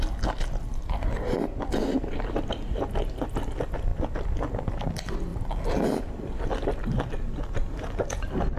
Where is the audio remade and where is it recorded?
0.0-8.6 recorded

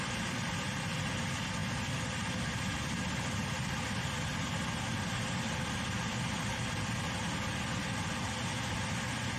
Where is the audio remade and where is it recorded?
0.0-9.4 recorded

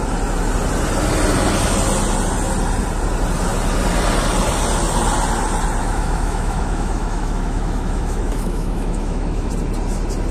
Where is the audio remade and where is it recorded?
0.0-5.8 recorded; 5.8-9.5 remade; 9.5-10.3 recorded

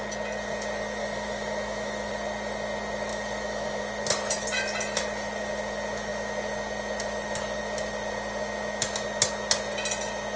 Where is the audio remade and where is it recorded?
0.0-1.0 recorded; 1.0-2.1 remade; 2.1-3.1 recorded; 3.1-3.8 remade; 3.8-10.4 recorded

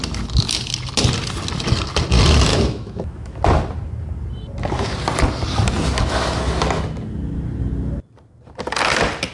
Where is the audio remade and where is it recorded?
0.0-2.5 recorded; 2.5-3.4 remade; 3.4-9.3 recorded

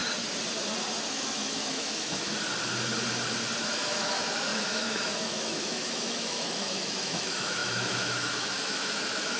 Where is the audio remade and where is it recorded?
0.0-1.1 recorded; 1.1-2.3 remade; 2.3-3.6 recorded; 3.6-9.4 remade

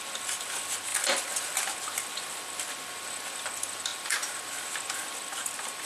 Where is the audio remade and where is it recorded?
0.0-5.9 recorded

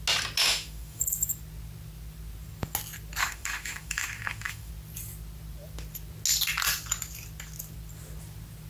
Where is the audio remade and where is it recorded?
0.0-0.4 recorded; 0.4-1.0 remade; 1.0-3.2 recorded; 3.2-4.7 remade; 4.7-8.7 recorded